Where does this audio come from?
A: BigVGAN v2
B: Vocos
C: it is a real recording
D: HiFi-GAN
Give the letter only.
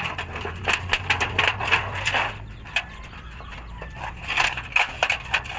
C